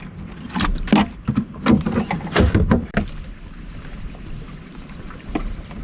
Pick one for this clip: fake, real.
real